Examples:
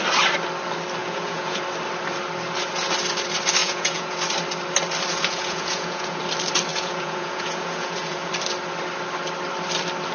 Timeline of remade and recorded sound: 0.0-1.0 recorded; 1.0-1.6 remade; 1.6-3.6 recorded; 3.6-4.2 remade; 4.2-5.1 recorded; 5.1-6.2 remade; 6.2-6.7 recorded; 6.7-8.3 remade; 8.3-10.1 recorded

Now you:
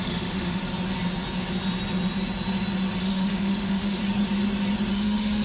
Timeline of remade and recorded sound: 0.0-0.6 remade; 0.6-3.0 recorded; 3.0-4.0 remade; 4.0-4.9 recorded; 4.9-5.4 remade

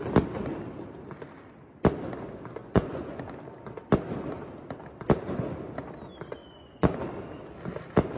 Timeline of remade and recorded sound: 0.0-2.6 recorded; 2.6-3.2 remade; 3.2-6.4 recorded; 6.4-7.0 remade; 7.0-8.2 recorded